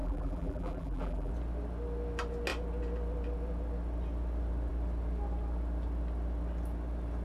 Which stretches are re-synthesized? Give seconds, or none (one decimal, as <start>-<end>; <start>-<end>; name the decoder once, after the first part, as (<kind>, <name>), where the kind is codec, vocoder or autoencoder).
0.0-1.3 (vocoder, BigVGAN v2)